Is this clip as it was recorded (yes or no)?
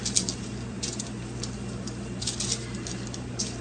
yes